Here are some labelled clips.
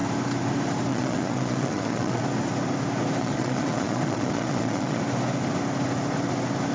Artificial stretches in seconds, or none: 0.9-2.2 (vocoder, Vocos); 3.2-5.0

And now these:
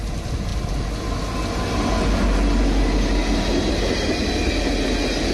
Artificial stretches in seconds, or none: none